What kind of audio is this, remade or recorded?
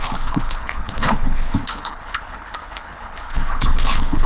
remade